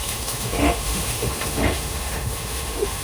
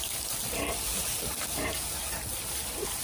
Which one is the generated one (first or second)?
first